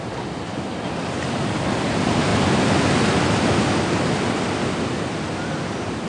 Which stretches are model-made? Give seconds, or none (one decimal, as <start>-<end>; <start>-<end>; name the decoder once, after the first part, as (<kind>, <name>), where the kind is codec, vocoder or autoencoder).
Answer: none